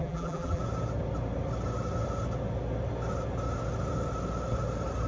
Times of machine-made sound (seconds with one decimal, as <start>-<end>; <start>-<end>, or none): 0.0-0.6